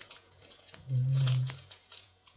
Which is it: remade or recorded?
remade